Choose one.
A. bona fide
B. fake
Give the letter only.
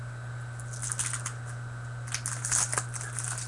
A